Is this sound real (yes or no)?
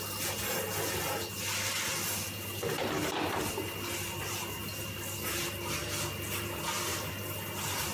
yes